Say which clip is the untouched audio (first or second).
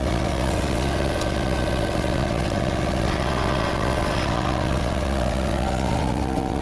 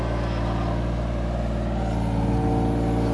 second